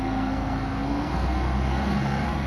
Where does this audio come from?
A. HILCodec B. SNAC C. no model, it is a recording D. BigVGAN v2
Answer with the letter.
B